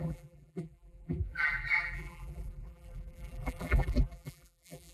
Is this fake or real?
fake